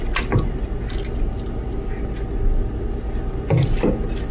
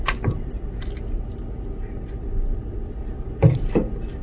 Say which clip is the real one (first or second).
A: first